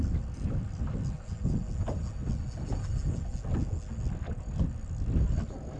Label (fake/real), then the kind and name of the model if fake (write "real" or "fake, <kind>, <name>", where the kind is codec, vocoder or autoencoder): real